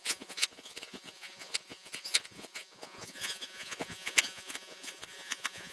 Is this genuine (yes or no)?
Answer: no